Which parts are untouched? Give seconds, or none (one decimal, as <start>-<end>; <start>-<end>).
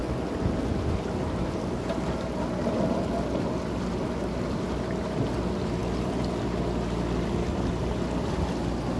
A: 0.0-9.0